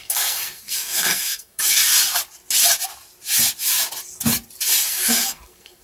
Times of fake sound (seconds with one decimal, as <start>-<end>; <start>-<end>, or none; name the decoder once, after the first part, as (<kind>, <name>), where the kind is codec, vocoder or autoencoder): 0.0-1.8 (codec, SNAC); 4.8-5.8